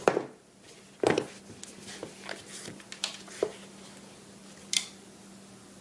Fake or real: real